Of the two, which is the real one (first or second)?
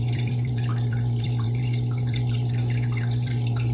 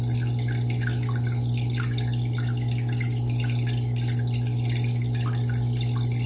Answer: second